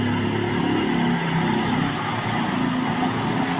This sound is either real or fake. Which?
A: real